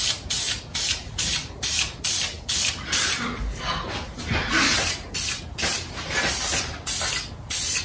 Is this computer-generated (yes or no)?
no